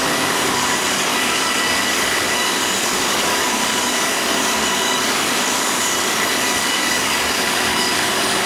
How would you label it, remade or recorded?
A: remade